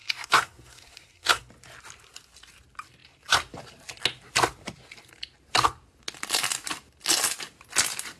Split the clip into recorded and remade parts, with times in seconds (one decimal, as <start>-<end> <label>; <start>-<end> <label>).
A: 0.0-1.5 remade; 1.5-8.2 recorded